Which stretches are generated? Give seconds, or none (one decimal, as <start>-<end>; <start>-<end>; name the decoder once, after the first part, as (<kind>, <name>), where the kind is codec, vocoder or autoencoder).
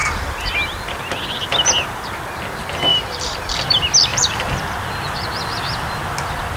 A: 0.0-1.0 (vocoder, BigVGAN v2); 2.9-3.5; 4.1-4.6